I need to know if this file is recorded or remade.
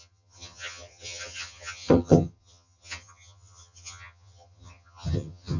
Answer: remade